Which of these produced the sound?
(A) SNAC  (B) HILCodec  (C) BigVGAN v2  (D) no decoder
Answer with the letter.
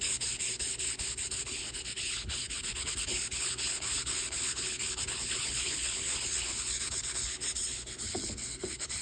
B